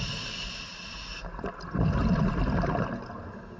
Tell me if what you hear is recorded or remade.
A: recorded